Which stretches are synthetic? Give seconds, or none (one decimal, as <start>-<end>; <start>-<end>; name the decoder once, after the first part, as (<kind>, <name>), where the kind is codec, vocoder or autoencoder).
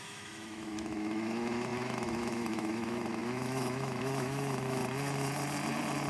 0.0-4.8 (autoencoder, DAC-VAE)